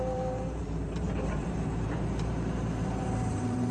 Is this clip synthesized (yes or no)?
yes